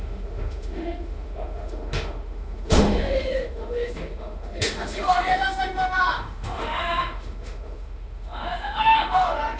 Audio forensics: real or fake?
fake